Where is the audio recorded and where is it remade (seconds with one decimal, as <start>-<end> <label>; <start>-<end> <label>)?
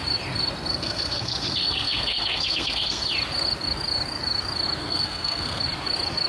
0.0-0.7 recorded; 0.7-3.0 remade; 3.0-4.8 recorded; 4.8-5.6 remade; 5.6-6.3 recorded